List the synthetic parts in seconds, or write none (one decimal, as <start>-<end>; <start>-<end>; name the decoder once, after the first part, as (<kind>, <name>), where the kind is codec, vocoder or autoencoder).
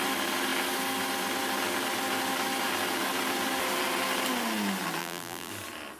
5.0-5.5 (vocoder, BigVGAN v2)